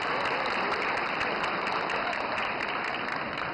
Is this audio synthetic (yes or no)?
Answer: yes